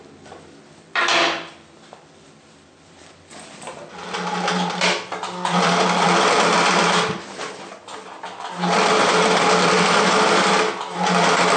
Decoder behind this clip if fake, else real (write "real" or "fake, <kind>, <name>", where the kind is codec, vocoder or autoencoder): fake, vocoder, BigVGAN v2